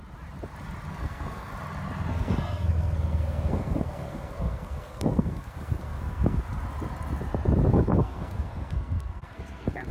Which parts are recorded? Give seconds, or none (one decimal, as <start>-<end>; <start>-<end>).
0.0-0.9; 1.5-2.1; 6.4-7.7